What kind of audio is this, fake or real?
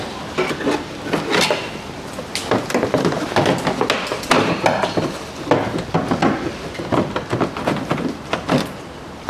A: real